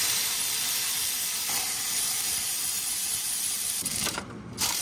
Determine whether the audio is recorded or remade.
remade